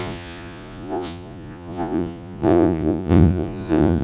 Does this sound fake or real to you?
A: fake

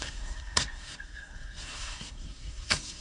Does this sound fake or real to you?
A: fake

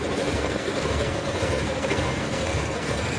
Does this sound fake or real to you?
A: fake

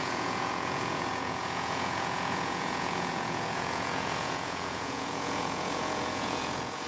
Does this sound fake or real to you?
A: fake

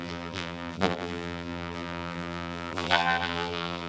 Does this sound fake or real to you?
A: fake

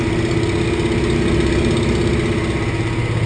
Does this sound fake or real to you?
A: real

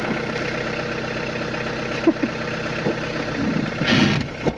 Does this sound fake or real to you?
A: real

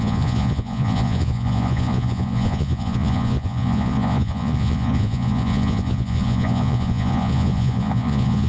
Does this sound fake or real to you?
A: fake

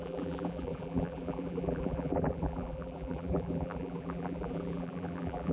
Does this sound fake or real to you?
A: fake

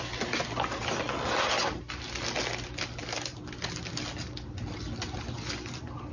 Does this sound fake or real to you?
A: real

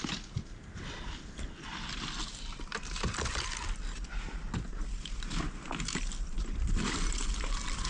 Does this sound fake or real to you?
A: real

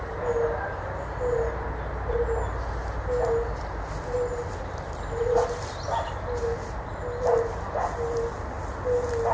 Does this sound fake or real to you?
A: real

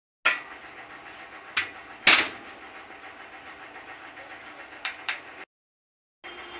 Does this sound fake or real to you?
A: real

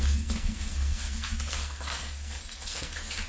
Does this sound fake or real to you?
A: fake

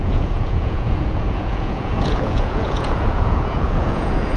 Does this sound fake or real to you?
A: fake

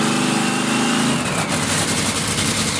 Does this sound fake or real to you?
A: real